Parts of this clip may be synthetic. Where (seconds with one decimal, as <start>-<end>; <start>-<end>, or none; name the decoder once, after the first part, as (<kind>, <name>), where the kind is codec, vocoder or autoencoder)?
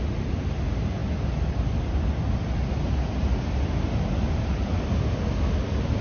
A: none